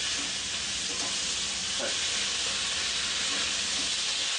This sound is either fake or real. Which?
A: real